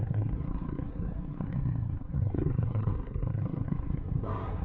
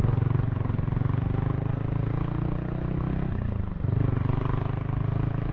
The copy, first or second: first